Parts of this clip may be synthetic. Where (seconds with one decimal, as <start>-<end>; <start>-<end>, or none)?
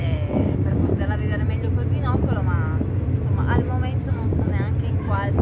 0.0-0.9; 4.1-4.5